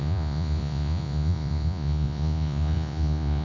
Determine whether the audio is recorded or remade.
remade